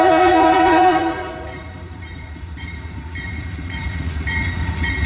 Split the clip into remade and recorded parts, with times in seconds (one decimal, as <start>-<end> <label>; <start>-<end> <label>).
0.0-5.1 remade